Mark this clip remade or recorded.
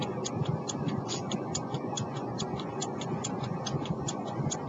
remade